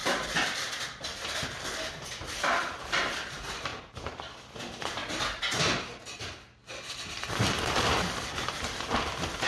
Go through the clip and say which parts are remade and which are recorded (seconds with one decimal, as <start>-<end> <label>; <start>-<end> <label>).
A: 0.0-0.8 recorded; 0.8-5.0 remade; 5.0-6.7 recorded; 6.7-9.5 remade